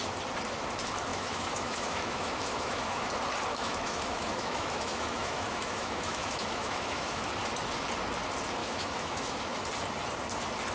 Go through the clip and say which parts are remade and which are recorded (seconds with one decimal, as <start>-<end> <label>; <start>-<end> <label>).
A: 0.0-1.1 recorded; 1.1-3.1 remade; 3.1-3.5 recorded; 3.5-7.3 remade; 7.3-8.6 recorded; 8.6-9.4 remade; 9.4-10.7 recorded